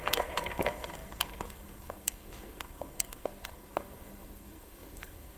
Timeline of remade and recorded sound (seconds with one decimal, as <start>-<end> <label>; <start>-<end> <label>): 0.0-5.4 remade